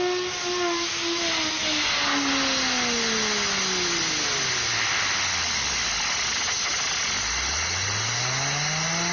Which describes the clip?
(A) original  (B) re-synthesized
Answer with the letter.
A